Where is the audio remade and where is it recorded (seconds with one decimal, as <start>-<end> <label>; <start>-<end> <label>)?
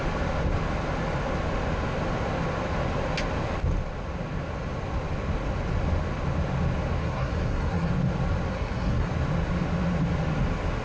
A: 0.0-7.0 recorded; 7.0-7.9 remade; 7.9-8.5 recorded; 8.5-9.1 remade; 9.1-10.8 recorded